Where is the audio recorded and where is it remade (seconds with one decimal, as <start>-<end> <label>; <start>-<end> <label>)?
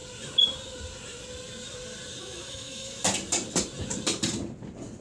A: 0.0-2.2 recorded; 2.2-3.0 remade; 3.0-5.0 recorded